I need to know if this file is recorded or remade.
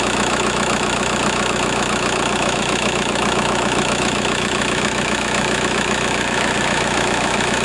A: remade